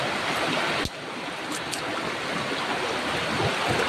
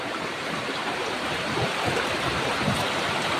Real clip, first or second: first